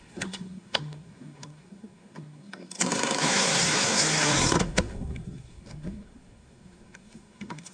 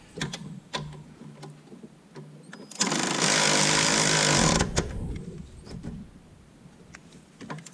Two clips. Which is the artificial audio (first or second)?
first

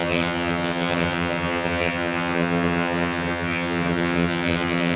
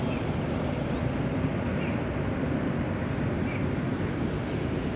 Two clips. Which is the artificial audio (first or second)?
first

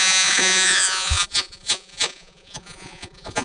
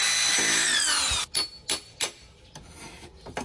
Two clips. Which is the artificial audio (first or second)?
first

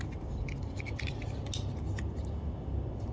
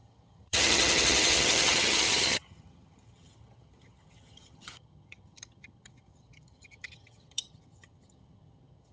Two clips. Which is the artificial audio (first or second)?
second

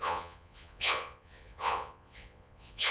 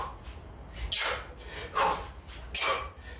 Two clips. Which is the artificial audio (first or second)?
first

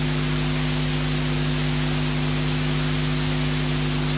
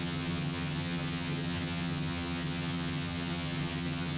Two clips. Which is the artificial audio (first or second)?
second